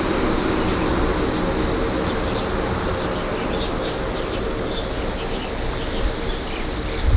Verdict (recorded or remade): recorded